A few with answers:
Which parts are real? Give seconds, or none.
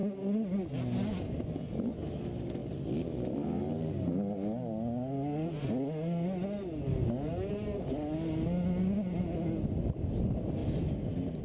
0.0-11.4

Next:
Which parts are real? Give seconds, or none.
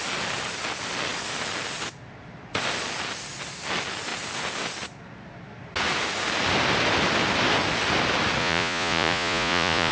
0.0-8.4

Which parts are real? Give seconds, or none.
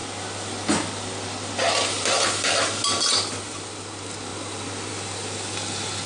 0.0-6.1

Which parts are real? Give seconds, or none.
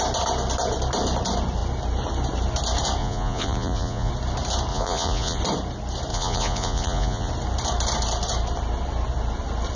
0.0-3.0; 4.1-4.7; 5.4-6.1; 7.3-9.8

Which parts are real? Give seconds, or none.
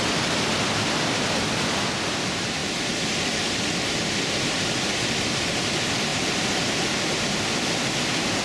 0.0-8.4